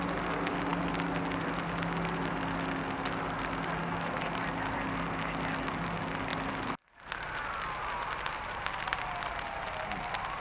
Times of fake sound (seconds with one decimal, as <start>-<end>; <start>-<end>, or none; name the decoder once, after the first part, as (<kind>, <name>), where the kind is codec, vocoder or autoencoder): none